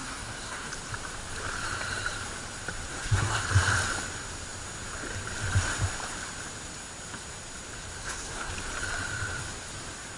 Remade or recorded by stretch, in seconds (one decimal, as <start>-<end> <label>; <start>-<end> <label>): 0.0-0.7 remade; 0.7-2.9 recorded; 2.9-3.4 remade; 3.4-8.0 recorded; 8.0-8.5 remade; 8.5-10.2 recorded